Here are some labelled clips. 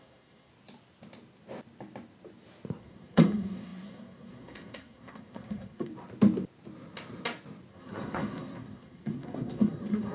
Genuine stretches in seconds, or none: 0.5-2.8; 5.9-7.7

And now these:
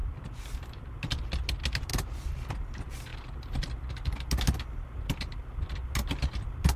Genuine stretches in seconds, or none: 0.0-6.8

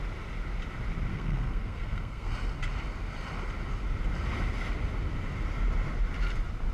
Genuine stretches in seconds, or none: 0.0-1.1; 2.3-6.7

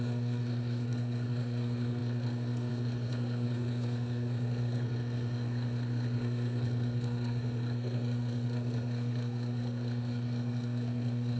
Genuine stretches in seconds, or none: none

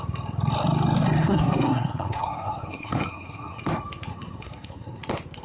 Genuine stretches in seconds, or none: 0.0-1.2; 3.6-4.1; 5.0-5.4

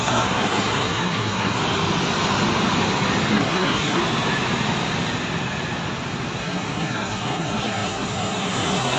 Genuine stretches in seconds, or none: 1.6-3.3; 4.0-6.4